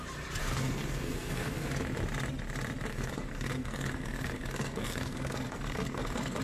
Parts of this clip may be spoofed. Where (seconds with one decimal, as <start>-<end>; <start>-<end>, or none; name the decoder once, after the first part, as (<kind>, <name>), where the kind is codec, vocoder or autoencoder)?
0.4-1.7 (codec, SNAC); 2.9-6.4